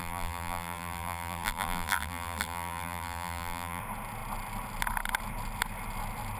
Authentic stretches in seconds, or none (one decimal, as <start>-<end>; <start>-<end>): 3.8-6.4